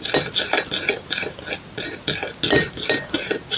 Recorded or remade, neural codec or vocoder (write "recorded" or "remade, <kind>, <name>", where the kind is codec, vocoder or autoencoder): recorded